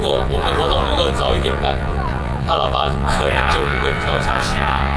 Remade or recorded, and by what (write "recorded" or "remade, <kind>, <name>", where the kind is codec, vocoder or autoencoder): remade, vocoder, WaveNeXt